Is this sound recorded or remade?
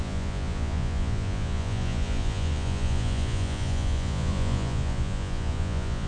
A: remade